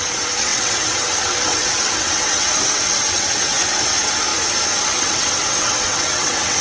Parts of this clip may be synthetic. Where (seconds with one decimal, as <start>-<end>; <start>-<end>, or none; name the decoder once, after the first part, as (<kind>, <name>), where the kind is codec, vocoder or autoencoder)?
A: 0.0-4.3 (vocoder, WaveNeXt); 4.8-6.6

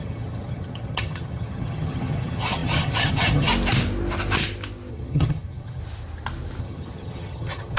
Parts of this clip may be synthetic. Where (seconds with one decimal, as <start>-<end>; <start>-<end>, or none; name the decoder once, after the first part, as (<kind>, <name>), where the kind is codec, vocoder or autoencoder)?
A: 0.0-3.5 (vocoder, HiFi-GAN); 4.9-5.8; 6.6-7.8

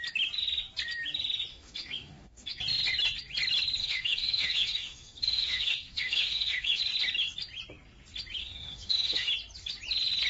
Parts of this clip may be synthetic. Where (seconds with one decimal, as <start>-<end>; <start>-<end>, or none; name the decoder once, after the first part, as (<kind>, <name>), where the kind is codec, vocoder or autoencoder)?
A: 1.5-2.6 (autoencoder, DAC-VAE); 3.8-6.8; 8.4-9.3

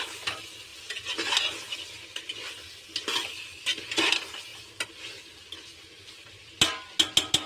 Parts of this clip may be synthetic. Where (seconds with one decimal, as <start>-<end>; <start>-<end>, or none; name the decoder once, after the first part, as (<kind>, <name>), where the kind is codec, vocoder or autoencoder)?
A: none

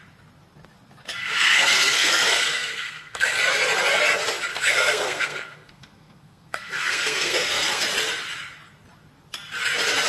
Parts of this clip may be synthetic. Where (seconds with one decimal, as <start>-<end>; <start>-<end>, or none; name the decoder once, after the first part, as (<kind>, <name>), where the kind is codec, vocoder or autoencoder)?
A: 1.2-3.4 (codec, SNAC); 4.5-7.8

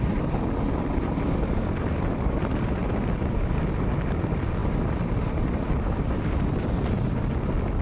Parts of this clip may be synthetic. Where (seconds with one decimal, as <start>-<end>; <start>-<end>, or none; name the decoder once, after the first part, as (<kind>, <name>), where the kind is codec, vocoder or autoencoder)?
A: 0.0-2.8 (vocoder, BigVGAN v2); 3.3-7.8

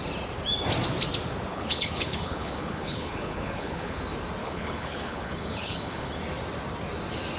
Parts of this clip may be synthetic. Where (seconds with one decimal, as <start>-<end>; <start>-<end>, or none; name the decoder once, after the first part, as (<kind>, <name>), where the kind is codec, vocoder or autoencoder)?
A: 1.5-4.0 (codec, HILCodec); 4.4-6.1